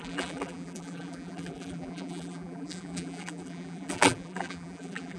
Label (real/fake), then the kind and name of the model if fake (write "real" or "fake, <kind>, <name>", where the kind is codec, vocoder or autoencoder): fake, vocoder, BigVGAN v2